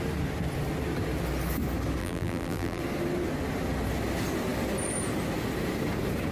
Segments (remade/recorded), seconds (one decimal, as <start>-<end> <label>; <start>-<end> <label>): 0.0-2.0 recorded; 2.0-2.8 remade; 2.8-6.3 recorded